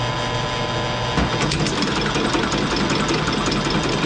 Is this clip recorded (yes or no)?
yes